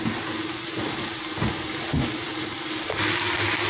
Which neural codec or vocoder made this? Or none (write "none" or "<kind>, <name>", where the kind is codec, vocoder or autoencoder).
none